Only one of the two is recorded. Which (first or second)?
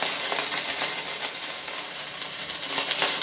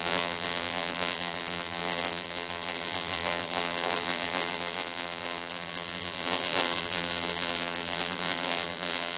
first